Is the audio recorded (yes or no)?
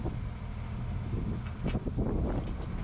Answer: yes